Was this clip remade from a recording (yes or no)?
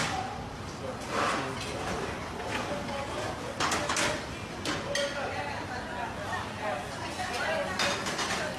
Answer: no